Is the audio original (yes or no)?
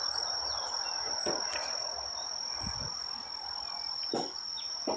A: yes